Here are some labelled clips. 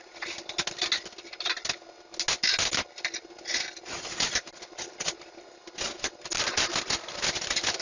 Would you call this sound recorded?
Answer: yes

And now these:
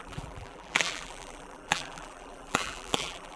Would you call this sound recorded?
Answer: no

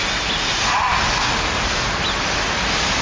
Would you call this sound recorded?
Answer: yes